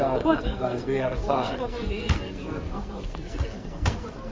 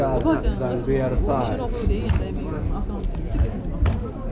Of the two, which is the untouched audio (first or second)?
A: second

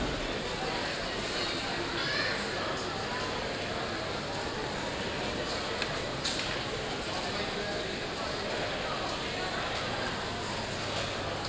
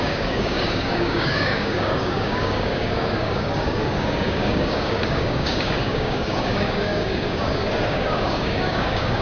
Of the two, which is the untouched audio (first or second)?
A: first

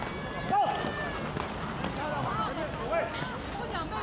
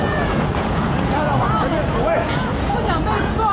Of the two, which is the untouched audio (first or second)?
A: first